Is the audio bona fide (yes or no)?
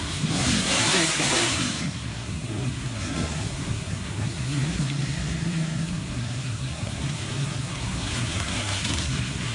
no